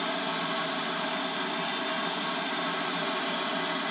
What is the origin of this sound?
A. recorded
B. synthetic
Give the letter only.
A